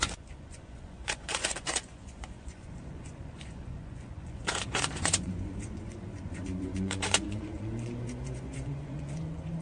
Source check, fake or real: fake